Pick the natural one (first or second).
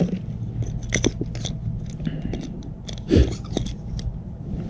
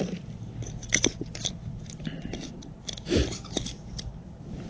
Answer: first